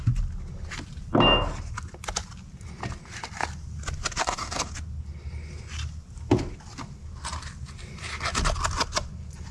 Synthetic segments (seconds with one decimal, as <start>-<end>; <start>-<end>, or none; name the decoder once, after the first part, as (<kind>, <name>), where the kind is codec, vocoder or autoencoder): 4.2-4.7 (codec, DAC)